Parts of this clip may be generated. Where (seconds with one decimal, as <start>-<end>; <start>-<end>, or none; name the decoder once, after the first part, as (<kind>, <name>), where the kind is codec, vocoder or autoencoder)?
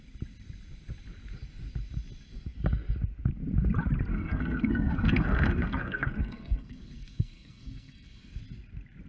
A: 4.1-8.4 (codec, SNAC)